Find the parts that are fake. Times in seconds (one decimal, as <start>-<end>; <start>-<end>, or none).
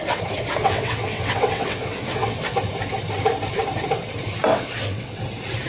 0.6-2.5; 4.5-5.2